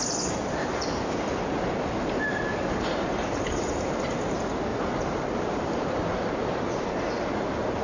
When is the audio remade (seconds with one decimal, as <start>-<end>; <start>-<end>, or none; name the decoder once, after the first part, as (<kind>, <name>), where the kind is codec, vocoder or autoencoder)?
0.6-3.9 (vocoder, BigVGAN v2); 4.7-5.9